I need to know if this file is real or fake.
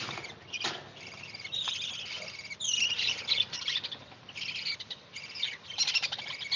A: real